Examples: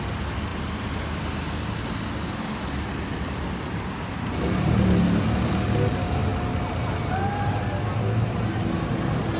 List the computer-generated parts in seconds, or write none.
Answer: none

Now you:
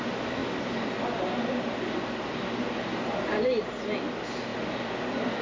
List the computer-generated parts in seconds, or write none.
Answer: none

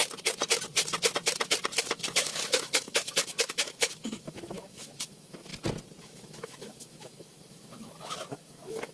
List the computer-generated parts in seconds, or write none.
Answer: 1.9-5.5 (autoencoder, DAC-VAE); 6.0-8.9

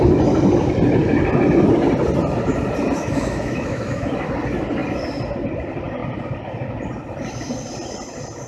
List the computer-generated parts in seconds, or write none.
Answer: 3.0-4.1 (autoencoder, DAC-VAE)